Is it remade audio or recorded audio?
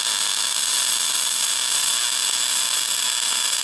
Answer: recorded